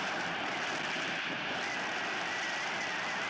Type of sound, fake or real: fake